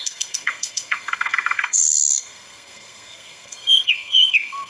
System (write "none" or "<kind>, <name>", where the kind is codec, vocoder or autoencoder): codec, SNAC